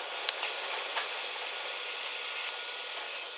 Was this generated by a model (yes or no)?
no